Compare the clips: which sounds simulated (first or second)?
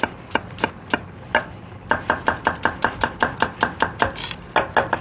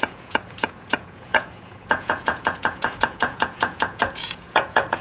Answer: second